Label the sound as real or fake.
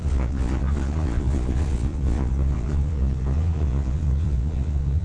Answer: fake